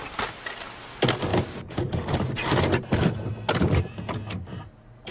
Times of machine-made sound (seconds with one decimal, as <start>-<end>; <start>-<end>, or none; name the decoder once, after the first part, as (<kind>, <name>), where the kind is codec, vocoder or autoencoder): none